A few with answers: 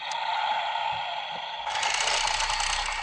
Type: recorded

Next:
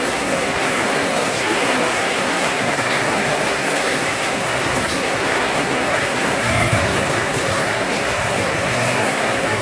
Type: remade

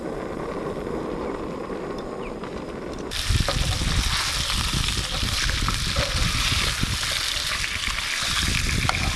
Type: recorded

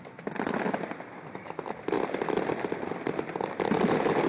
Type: recorded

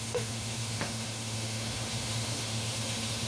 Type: remade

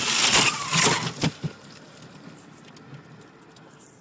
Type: recorded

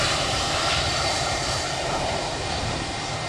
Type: remade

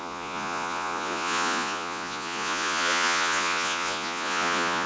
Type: remade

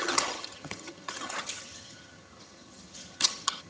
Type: remade